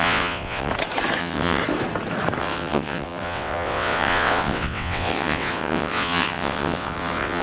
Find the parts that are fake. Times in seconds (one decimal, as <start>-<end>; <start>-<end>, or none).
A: 0.0-0.7; 1.2-1.6; 2.4-7.4